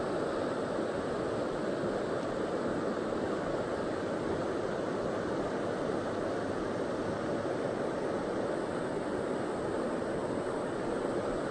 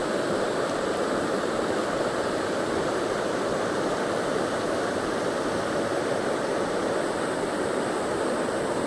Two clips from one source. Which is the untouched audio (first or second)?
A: first